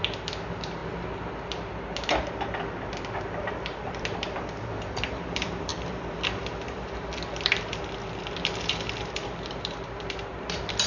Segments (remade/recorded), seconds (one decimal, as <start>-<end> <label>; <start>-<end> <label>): 0.0-0.8 remade; 0.8-3.4 recorded; 3.4-10.9 remade